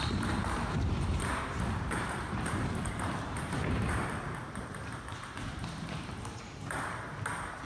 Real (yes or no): no